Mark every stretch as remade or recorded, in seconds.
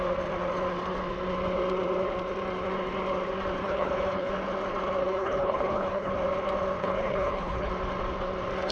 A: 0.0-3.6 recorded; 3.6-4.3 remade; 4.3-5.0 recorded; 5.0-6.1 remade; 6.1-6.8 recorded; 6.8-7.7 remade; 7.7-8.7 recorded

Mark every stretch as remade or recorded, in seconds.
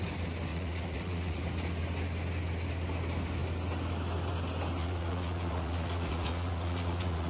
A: 0.0-0.5 recorded; 0.5-1.4 remade; 1.4-4.8 recorded; 4.8-7.3 remade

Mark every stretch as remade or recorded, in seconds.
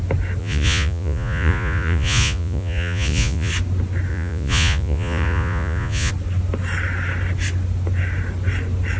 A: 0.0-0.4 recorded; 0.4-3.5 remade; 3.5-4.1 recorded; 4.1-6.1 remade; 6.1-9.0 recorded